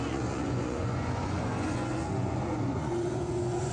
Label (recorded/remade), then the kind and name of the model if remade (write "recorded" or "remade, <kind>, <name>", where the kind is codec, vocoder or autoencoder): remade, vocoder, Vocos